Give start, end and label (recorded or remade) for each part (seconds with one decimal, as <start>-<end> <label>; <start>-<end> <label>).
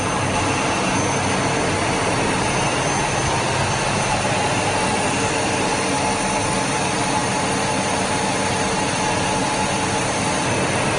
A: 0.0-11.0 recorded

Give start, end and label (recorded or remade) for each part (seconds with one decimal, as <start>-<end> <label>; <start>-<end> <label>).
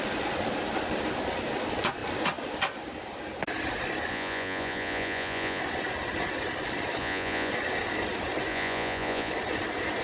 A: 0.0-4.1 recorded; 4.1-5.6 remade; 5.6-7.0 recorded; 7.0-7.5 remade; 7.5-8.5 recorded; 8.5-9.3 remade; 9.3-10.0 recorded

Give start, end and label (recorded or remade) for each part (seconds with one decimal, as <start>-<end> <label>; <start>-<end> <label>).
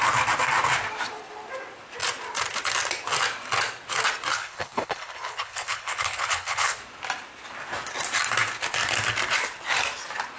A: 0.0-4.3 recorded; 4.3-6.8 remade; 6.8-10.4 recorded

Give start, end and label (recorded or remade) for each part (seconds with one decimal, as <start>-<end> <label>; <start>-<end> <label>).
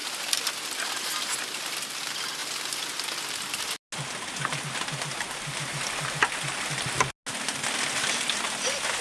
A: 0.0-9.0 recorded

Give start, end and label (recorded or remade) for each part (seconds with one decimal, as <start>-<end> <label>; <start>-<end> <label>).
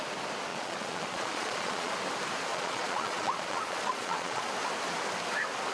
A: 0.0-0.5 recorded; 0.5-1.9 remade; 1.9-2.5 recorded; 2.5-4.5 remade; 4.5-5.7 recorded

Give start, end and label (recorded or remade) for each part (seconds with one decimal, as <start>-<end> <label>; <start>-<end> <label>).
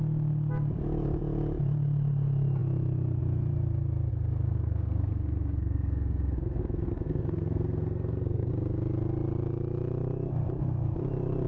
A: 0.0-4.1 recorded; 4.1-8.5 remade; 8.5-11.5 recorded